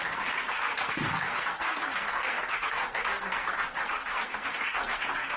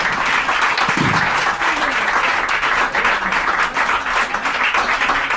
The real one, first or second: second